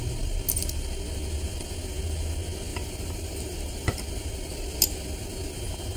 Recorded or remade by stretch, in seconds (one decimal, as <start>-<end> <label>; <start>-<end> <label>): 0.0-2.7 recorded; 2.7-4.0 remade; 4.0-6.0 recorded